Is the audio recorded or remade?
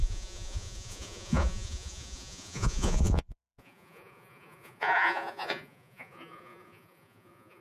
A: remade